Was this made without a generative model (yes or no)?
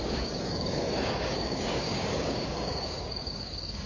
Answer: no